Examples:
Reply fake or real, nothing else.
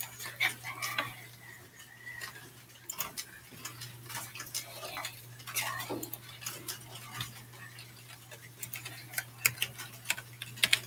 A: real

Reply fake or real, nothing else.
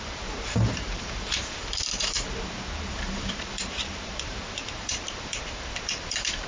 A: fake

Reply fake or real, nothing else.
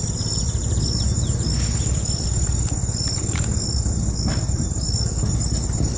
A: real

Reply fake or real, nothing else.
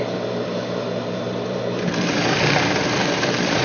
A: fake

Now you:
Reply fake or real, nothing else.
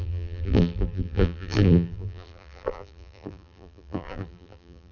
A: fake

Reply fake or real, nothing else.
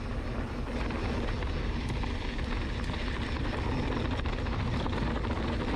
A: real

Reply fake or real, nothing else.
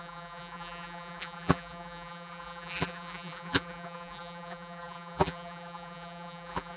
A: fake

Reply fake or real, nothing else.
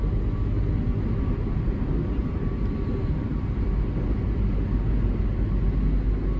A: real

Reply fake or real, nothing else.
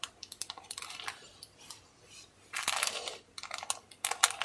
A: real